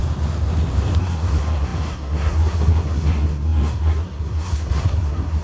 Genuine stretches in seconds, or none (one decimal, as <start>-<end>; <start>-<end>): 0.0-1.0